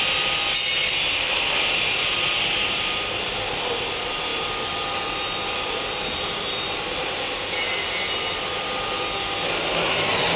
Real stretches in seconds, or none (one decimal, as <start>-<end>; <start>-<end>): 0.0-10.4